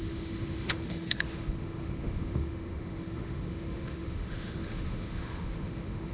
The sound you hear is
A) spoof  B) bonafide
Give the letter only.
A